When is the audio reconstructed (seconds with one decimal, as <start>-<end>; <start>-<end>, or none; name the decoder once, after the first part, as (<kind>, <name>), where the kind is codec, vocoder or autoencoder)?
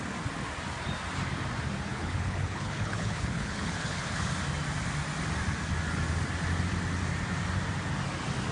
1.9-4.2 (codec, HILCodec)